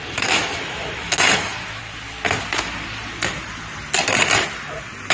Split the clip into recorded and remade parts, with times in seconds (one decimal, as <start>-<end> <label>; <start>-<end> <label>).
0.0-1.8 remade; 1.8-5.1 recorded